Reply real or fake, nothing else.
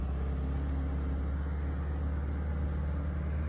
real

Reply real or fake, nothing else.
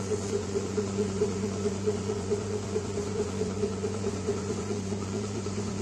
fake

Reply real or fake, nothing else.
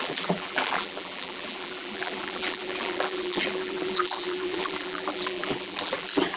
fake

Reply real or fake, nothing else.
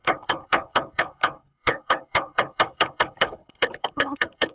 fake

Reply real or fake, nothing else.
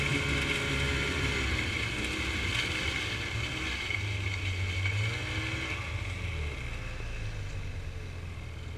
real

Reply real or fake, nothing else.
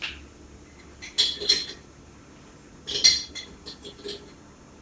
real